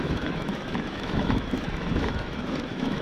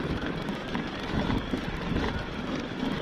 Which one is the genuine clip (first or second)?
second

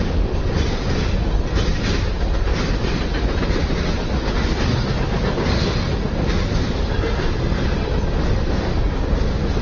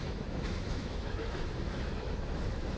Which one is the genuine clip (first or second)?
first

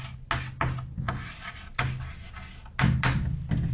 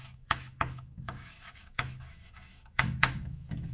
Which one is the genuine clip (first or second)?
first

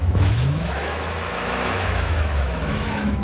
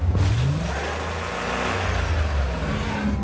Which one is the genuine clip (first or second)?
second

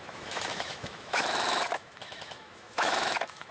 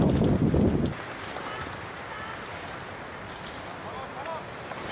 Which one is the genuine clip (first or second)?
second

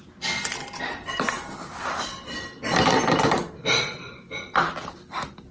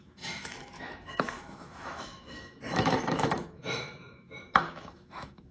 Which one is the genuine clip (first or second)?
first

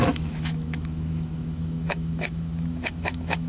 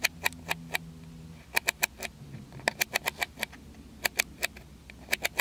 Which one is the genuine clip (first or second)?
second